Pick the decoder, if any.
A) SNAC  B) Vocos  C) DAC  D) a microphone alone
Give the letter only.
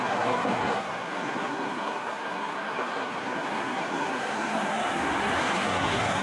A